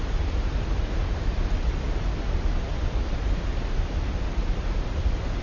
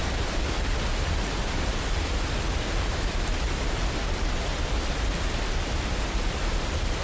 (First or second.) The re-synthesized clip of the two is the second